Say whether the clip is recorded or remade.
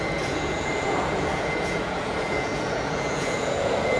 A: remade